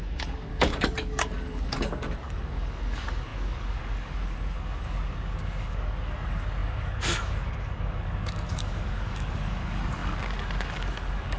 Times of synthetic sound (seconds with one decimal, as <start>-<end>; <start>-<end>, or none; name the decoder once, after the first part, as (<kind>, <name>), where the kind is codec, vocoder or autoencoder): 0.0-11.4 (codec, DAC)